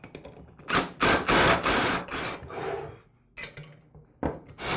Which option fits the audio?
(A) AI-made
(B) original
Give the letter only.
B